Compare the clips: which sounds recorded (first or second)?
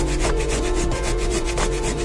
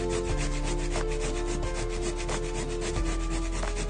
second